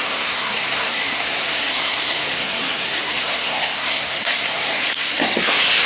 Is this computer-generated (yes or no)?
yes